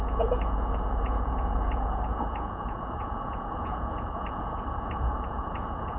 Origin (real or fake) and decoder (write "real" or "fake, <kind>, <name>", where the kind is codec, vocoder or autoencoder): fake, vocoder, Vocos